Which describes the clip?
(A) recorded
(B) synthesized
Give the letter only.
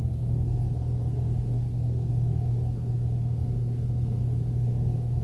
B